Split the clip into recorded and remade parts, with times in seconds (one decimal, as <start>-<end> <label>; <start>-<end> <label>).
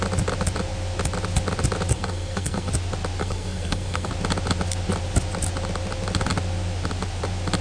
0.0-1.9 recorded; 1.9-2.7 remade; 2.7-3.2 recorded; 3.2-4.1 remade; 4.1-7.6 recorded